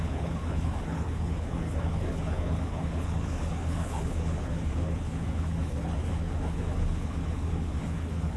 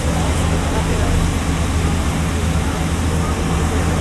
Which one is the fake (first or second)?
first